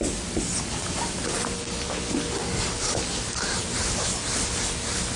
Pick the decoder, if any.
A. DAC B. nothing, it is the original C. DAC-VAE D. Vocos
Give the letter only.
B